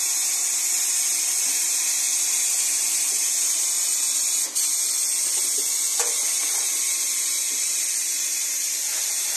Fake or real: real